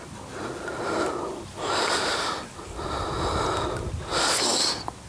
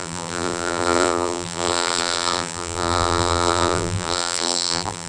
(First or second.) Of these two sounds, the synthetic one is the second